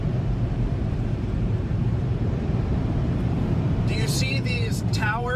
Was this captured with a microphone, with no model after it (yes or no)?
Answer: no